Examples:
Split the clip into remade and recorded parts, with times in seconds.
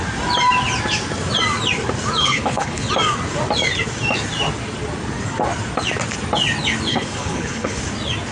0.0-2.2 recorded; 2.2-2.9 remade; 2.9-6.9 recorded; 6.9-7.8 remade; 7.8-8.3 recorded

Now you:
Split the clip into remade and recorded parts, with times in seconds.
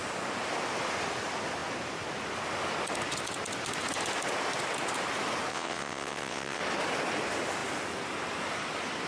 0.0-5.5 recorded; 5.5-6.6 remade; 6.6-9.1 recorded